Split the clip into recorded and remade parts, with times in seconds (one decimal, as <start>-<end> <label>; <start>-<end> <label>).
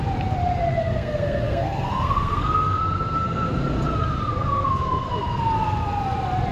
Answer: 0.0-0.8 recorded; 0.8-3.5 remade; 3.5-4.3 recorded; 4.3-5.1 remade; 5.1-6.5 recorded